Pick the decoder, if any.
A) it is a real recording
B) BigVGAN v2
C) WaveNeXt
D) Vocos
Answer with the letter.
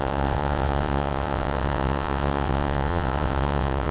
C